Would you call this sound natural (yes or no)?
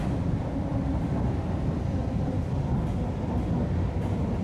no